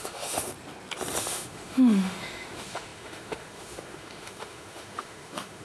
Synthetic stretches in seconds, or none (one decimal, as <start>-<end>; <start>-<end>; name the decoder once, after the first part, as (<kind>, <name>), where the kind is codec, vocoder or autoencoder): 0.0-0.5 (autoencoder, DAC-VAE); 1.2-5.6